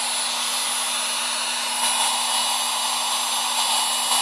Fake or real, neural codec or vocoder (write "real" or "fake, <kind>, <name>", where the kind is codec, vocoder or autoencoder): real